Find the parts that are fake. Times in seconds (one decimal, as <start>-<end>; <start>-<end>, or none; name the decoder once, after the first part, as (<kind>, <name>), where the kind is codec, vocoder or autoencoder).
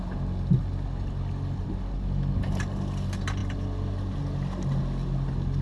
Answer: none